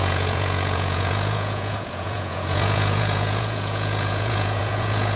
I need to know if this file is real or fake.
fake